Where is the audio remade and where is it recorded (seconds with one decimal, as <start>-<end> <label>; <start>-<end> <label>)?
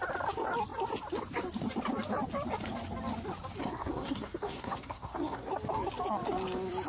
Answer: 0.0-3.6 recorded; 3.6-5.5 remade; 5.5-6.9 recorded